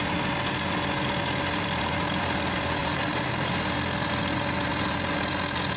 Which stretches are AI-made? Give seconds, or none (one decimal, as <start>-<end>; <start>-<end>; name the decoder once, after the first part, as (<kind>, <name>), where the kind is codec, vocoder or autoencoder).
2.8-3.5 (vocoder, BigVGAN v2)